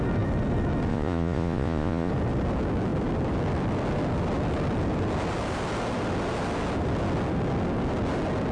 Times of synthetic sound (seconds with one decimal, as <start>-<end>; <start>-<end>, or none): 0.9-2.1